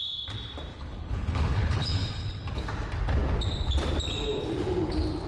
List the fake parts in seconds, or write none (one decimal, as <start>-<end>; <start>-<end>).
0.7-2.4